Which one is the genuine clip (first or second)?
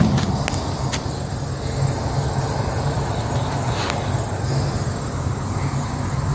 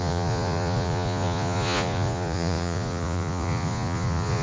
first